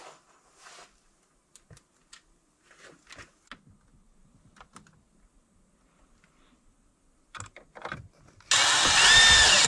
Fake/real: real